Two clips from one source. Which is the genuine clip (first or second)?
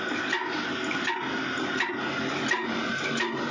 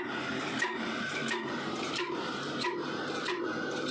first